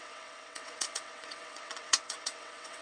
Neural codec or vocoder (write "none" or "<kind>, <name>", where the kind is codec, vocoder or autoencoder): vocoder, WaveNeXt